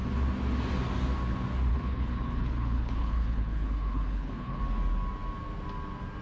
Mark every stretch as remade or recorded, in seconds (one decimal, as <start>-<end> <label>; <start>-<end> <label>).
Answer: 0.0-1.7 recorded; 1.7-4.6 remade; 4.6-6.2 recorded